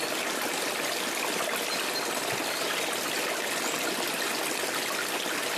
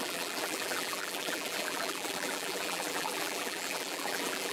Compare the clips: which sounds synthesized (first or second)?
second